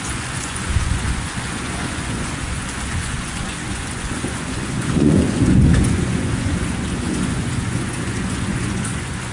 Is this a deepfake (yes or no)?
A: yes